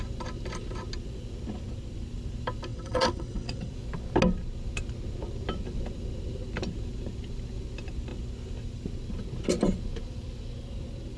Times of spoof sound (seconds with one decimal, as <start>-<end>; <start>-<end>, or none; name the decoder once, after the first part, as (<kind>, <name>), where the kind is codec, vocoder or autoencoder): 2.7-3.7 (vocoder, WaveNeXt)